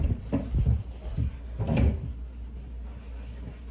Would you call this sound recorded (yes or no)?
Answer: yes